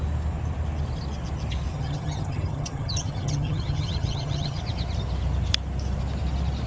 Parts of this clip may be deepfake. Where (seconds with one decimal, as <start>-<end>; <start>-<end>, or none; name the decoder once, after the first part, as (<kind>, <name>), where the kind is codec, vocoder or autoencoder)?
1.7-4.6 (vocoder, HiFi-GAN)